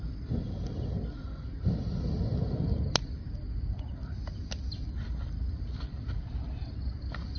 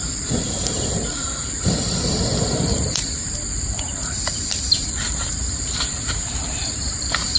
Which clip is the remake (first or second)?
second